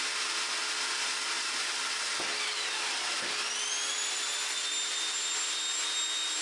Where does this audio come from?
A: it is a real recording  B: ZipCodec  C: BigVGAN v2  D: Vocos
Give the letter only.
A